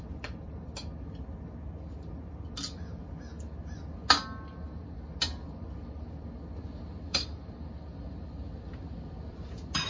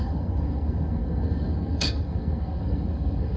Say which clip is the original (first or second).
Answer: first